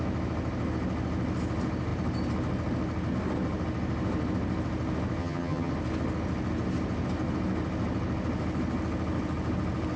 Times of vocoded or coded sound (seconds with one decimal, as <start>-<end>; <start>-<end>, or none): 5.2-5.7